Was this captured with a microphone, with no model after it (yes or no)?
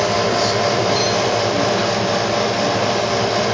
yes